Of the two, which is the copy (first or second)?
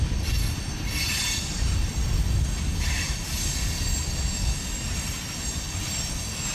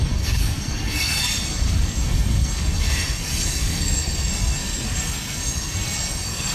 second